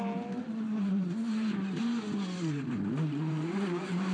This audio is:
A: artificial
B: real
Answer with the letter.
A